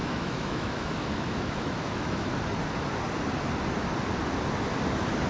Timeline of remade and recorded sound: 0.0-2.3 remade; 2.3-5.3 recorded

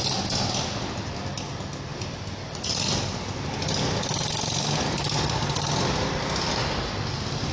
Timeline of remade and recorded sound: 0.0-7.5 recorded

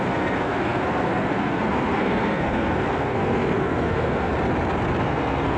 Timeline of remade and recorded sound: 0.0-4.3 remade; 4.3-5.0 recorded; 5.0-5.6 remade

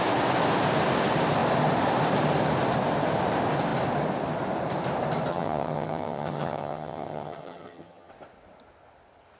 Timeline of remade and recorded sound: 0.0-5.3 recorded; 5.3-8.1 remade; 8.1-9.4 recorded